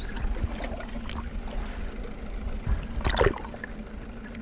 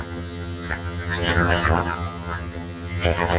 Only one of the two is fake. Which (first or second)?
second